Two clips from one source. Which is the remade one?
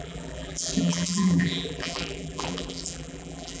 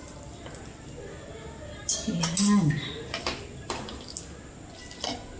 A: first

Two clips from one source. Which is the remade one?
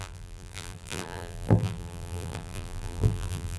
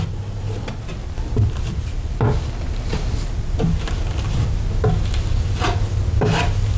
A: first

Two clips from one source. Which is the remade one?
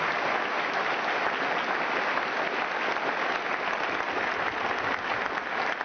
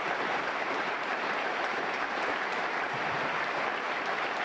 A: second